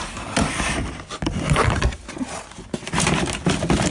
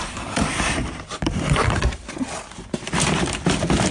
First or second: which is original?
first